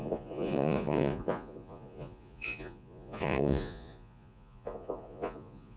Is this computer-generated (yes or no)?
yes